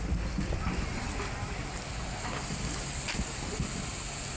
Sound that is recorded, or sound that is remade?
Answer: recorded